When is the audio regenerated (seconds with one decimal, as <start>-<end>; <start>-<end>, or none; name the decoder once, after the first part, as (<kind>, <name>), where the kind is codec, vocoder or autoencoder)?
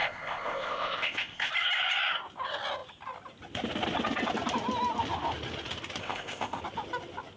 0.0-1.5 (codec, ZipCodec); 6.0-6.6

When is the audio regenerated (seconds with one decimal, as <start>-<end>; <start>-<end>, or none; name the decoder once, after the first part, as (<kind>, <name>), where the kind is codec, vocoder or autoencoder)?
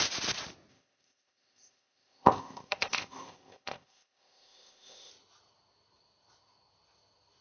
0.7-5.1 (codec, ZipCodec)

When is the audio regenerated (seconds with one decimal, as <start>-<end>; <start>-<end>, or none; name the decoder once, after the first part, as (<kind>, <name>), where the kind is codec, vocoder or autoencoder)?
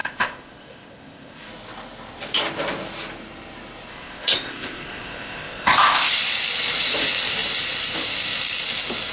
0.0-1.5 (codec, ZipCodec); 3.9-6.1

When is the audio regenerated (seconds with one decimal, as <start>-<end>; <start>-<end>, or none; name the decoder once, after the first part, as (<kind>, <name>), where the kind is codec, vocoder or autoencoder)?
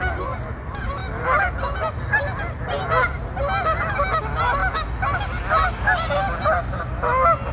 none